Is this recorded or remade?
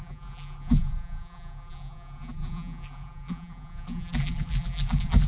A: remade